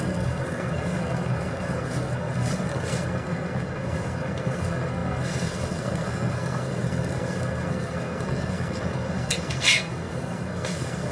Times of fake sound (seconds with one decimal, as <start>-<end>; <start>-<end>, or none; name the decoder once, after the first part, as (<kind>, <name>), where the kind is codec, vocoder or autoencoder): 0.0-11.1 (codec, SNAC)